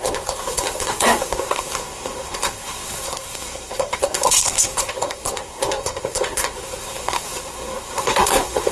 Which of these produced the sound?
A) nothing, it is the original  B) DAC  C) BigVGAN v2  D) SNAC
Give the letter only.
D